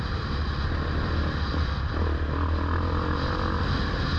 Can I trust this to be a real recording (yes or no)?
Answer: yes